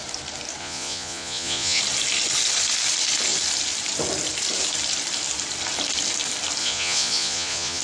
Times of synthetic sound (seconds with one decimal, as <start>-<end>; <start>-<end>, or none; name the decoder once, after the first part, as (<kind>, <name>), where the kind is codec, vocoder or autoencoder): 0.6-1.8 (vocoder, Vocos); 6.6-7.8